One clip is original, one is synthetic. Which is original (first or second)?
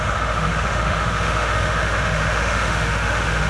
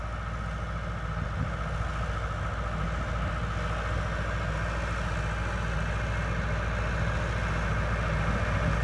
second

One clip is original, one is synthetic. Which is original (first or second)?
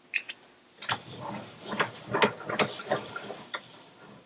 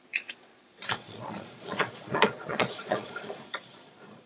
first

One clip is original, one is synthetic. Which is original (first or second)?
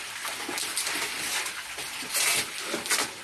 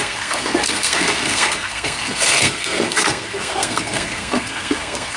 first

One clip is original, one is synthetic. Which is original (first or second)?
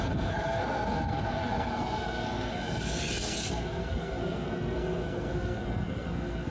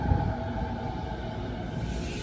second